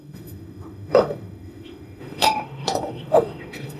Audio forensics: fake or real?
fake